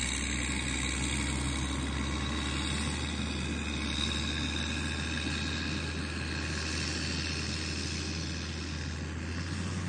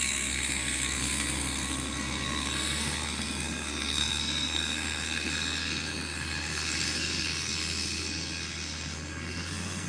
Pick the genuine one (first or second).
first